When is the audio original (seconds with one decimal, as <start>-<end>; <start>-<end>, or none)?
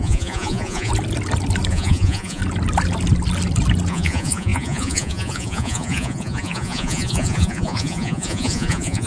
0.9-1.7; 2.4-3.9